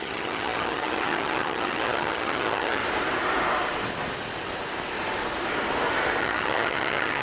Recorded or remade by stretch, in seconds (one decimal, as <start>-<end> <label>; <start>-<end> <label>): 0.0-2.8 remade; 2.8-6.2 recorded; 6.2-7.2 remade